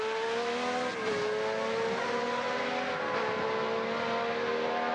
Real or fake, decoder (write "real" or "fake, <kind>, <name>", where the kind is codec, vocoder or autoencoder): real